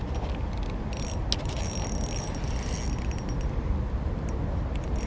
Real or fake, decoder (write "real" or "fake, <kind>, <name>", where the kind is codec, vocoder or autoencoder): real